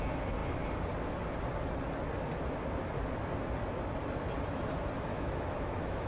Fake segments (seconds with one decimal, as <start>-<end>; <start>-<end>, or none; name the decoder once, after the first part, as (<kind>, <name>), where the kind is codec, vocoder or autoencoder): 5.1-6.1 (autoencoder, DAC-VAE)